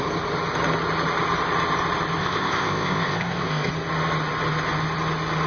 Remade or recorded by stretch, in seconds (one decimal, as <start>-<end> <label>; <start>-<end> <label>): 0.0-2.2 recorded; 2.2-3.7 remade; 3.7-5.5 recorded